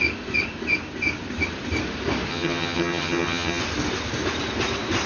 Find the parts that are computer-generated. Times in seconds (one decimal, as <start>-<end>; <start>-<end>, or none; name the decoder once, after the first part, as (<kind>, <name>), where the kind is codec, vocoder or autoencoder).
2.3-3.6 (vocoder, HiFi-GAN)